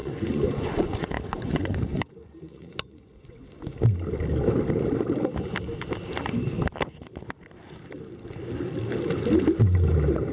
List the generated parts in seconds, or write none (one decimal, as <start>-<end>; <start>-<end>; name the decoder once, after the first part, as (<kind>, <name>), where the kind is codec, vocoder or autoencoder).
0.0-3.7 (vocoder, Vocos)